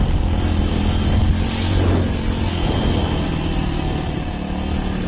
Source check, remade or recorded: recorded